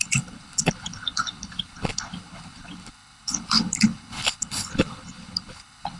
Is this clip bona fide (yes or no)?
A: no